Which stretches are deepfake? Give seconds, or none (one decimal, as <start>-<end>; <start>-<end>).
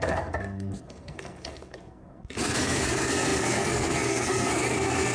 0.0-5.1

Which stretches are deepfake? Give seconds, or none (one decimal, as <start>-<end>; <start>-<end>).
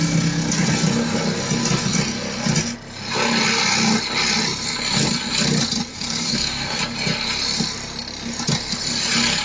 5.9-6.8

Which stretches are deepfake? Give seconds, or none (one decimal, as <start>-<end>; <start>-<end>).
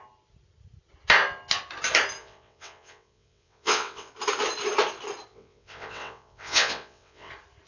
2.2-4.1; 5.3-7.3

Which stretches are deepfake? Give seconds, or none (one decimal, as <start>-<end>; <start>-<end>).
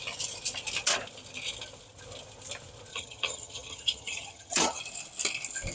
2.9-4.8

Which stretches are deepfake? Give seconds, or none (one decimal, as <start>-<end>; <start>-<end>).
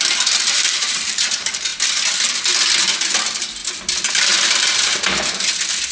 0.0-1.7; 3.0-3.6; 4.1-4.9